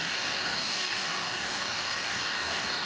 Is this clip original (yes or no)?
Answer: no